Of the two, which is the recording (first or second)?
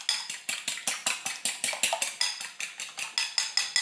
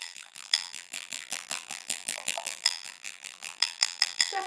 first